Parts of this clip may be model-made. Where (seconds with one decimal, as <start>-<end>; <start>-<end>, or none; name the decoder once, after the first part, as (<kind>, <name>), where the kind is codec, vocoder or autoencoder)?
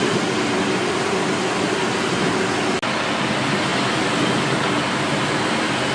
none